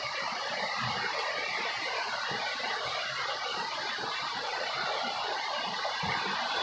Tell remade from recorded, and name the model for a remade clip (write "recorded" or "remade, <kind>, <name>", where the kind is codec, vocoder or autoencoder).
remade, vocoder, BigVGAN v2